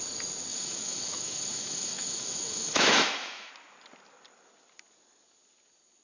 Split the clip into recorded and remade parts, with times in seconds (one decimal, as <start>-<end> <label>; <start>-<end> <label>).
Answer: 0.0-0.5 recorded; 0.5-3.5 remade; 3.5-6.0 recorded